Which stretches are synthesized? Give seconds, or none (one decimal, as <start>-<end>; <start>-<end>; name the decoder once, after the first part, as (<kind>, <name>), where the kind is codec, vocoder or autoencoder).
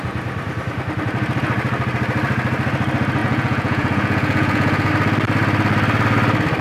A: 3.2-4.9 (vocoder, Vocos)